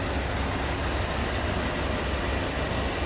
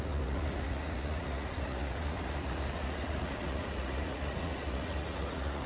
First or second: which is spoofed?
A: second